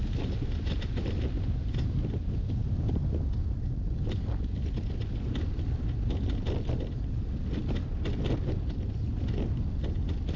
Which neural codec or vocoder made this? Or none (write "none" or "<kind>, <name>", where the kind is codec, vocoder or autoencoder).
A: none